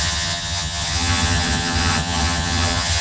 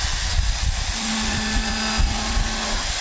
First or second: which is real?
second